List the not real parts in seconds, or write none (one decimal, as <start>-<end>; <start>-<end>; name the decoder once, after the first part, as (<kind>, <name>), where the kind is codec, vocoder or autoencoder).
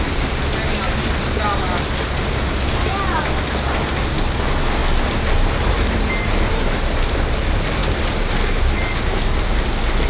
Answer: none